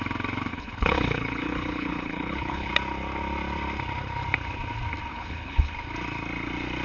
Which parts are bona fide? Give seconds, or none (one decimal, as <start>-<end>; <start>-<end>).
0.0-0.5; 2.7-5.1; 5.7-6.8